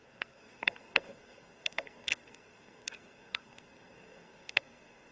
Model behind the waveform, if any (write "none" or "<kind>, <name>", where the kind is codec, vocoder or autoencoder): codec, SNAC